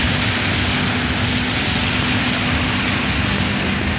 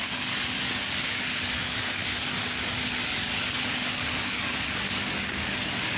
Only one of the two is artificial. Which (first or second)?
second